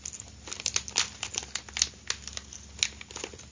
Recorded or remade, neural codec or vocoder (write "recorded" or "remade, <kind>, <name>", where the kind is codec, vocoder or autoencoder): recorded